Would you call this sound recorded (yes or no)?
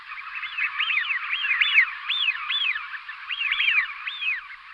yes